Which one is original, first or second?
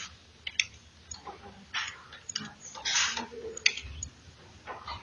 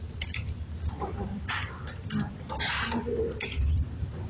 first